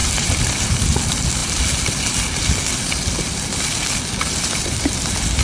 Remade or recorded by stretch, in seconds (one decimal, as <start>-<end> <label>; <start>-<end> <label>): 0.0-5.4 recorded